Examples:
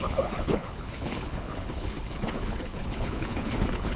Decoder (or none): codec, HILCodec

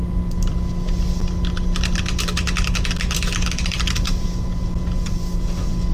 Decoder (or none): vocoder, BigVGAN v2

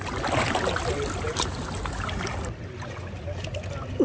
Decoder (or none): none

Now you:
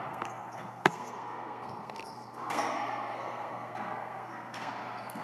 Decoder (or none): codec, SNAC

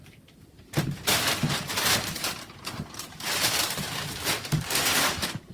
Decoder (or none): vocoder, BigVGAN v2